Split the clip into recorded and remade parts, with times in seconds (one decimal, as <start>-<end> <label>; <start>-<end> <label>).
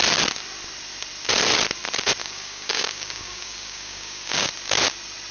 0.0-2.2 recorded; 2.2-4.5 remade; 4.5-5.3 recorded